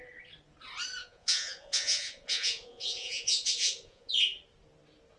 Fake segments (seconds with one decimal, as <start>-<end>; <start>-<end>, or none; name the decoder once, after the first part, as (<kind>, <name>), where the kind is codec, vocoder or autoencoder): 1.0-4.1 (vocoder, Vocos)